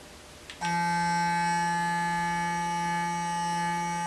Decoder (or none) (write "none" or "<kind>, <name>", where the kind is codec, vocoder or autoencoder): none